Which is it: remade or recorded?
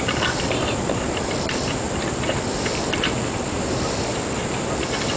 recorded